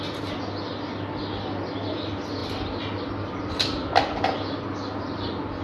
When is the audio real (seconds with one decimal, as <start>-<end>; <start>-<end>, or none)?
0.0-5.6